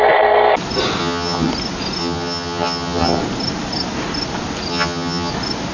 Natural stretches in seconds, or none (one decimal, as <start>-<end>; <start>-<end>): 0.0-1.0; 1.5-2.0; 3.2-4.7; 5.3-5.7